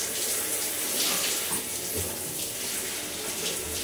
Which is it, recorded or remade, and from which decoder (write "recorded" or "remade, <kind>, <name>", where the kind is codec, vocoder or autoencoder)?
remade, vocoder, BigVGAN v2